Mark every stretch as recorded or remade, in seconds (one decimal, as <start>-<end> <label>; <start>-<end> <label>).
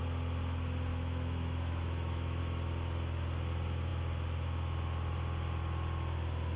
0.0-0.9 recorded; 0.9-2.4 remade; 2.4-6.6 recorded